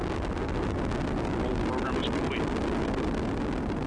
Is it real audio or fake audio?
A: real